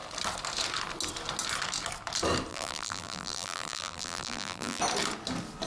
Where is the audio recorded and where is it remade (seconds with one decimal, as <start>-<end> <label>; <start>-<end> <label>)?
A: 0.0-2.5 recorded; 2.5-4.8 remade; 4.8-5.7 recorded